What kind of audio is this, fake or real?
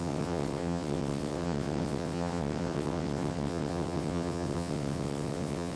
fake